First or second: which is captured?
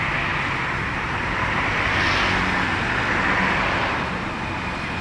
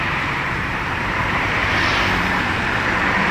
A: first